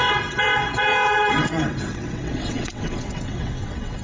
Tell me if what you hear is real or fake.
fake